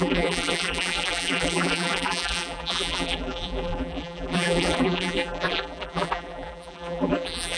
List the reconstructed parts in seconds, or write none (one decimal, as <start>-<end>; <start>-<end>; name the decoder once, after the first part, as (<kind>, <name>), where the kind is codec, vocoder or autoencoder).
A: 0.0-7.6 (vocoder, BigVGAN v2)